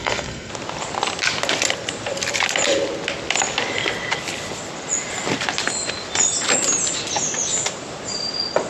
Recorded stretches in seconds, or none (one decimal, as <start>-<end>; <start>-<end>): 0.5-8.7